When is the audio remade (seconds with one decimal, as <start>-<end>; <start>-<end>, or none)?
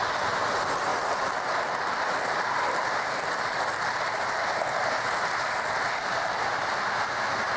none